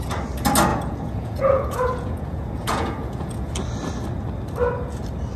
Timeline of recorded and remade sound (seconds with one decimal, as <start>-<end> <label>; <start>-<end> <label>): 0.0-0.7 recorded; 0.7-3.5 remade; 3.5-5.4 recorded